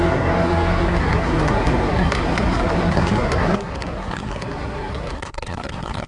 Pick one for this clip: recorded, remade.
remade